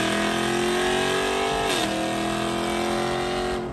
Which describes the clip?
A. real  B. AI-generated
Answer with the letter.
A